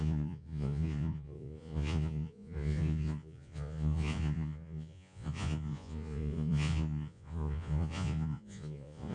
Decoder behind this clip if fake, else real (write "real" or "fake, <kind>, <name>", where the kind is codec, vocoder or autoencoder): fake, vocoder, Vocos